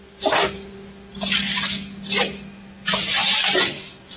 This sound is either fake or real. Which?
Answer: real